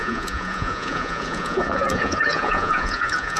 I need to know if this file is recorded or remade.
remade